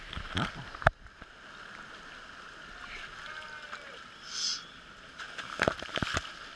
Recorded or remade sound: recorded